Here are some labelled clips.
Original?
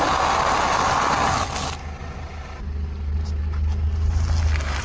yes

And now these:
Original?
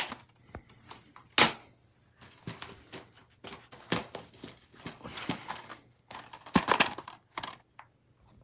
yes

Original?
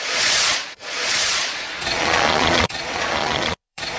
no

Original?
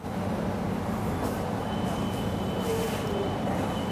yes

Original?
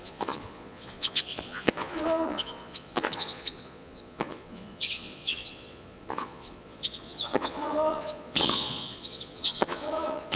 no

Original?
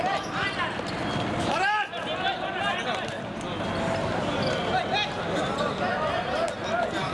yes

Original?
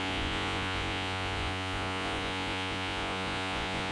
no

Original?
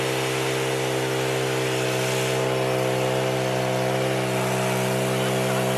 yes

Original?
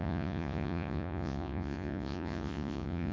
no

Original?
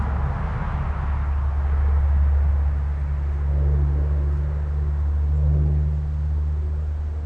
yes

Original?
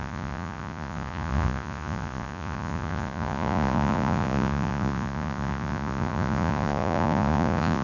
no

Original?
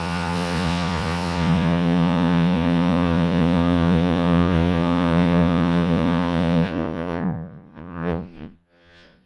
no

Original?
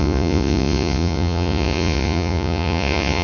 no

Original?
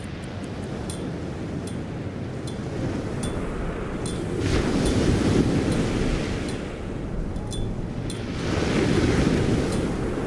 yes